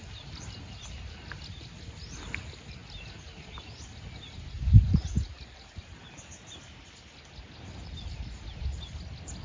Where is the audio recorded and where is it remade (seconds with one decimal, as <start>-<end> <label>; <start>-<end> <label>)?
0.0-9.4 recorded